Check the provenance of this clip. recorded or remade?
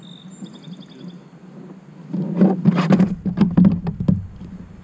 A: recorded